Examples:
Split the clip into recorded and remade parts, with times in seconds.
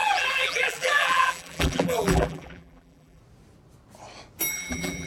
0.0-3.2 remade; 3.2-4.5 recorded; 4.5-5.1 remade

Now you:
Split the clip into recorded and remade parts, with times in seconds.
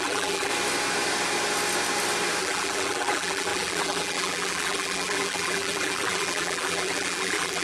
0.0-0.5 remade; 0.5-2.4 recorded; 2.4-7.6 remade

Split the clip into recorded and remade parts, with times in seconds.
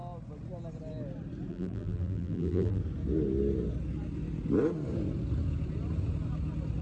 0.0-1.5 recorded; 1.5-2.8 remade; 2.8-6.8 recorded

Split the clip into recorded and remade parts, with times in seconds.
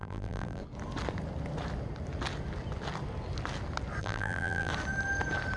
0.0-0.6 remade; 0.6-4.0 recorded; 4.0-4.7 remade; 4.7-5.6 recorded